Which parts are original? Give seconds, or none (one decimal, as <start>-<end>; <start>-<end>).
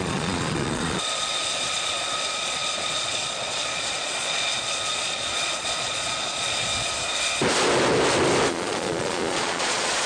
6.7-8.5